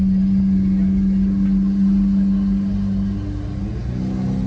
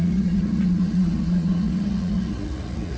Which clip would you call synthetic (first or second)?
second